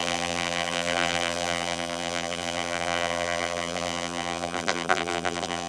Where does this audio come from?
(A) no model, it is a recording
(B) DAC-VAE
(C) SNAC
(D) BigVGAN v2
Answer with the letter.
D